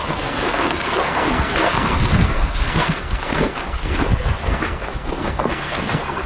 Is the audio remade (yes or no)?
yes